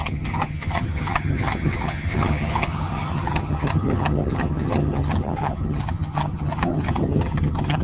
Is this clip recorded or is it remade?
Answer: remade